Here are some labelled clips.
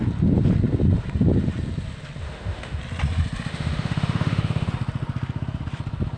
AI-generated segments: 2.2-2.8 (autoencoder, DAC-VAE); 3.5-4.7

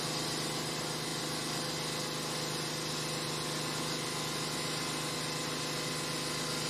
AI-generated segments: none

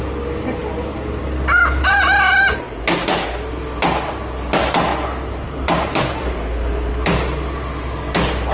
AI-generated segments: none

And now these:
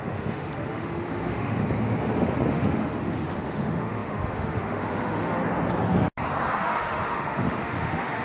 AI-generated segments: 0.0-1.6 (autoencoder, DAC-VAE); 2.5-5.4; 6.5-8.2

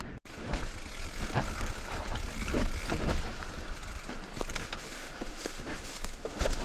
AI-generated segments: 0.0-0.6 (autoencoder, DAC-VAE); 4.6-6.6

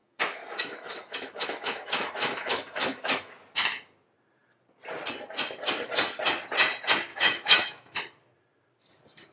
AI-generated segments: 0.0-3.3 (autoencoder, DAC-VAE); 7.1-8.0

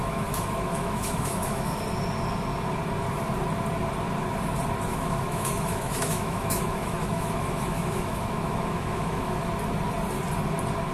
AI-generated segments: 0.0-1.8 (autoencoder, DAC-VAE); 4.9-9.5

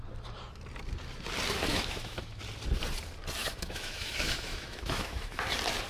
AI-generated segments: 1.7-2.4 (autoencoder, DAC-VAE); 3.4-5.4